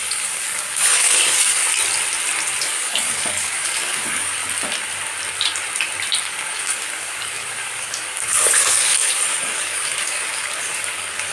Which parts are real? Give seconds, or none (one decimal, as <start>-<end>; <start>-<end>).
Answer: 1.6-2.6; 4.4-6.2

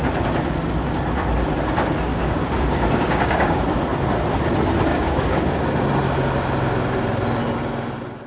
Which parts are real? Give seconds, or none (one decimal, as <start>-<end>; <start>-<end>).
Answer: 0.0-2.1; 3.6-4.9; 5.6-8.3

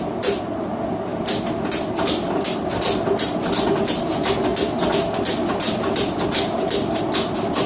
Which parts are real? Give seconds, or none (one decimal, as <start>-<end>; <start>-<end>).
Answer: 0.0-7.7